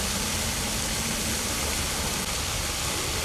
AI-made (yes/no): no